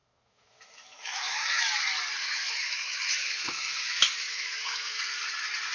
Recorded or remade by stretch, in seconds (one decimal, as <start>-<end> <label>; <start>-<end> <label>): 0.0-1.6 remade; 1.6-2.2 recorded; 2.2-5.0 remade; 5.0-5.7 recorded